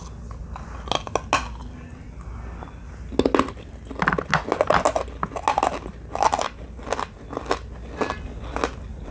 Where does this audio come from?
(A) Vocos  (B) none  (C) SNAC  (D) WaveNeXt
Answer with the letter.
B